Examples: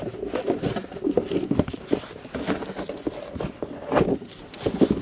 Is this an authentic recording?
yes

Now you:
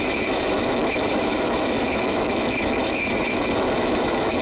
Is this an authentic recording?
no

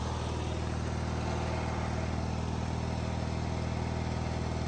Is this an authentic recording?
yes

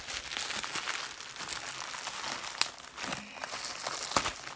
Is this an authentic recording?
yes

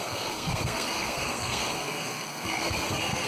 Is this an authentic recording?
no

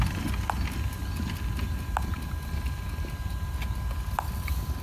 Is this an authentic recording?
yes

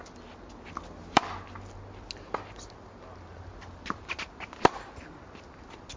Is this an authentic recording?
yes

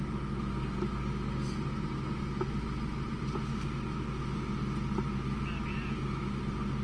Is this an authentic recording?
yes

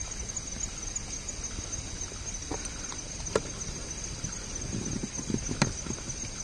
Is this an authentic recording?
yes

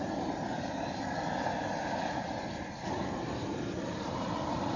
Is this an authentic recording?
no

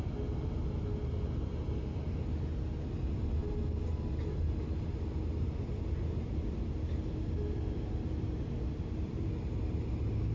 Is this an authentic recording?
yes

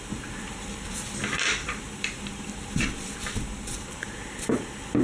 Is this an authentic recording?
no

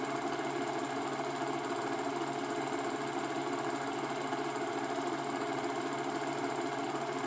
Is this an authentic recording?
yes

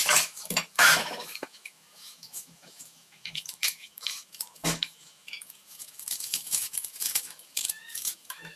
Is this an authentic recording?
no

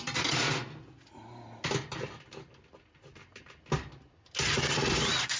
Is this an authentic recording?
yes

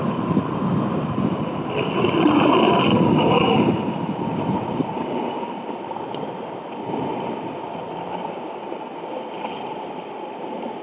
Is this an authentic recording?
no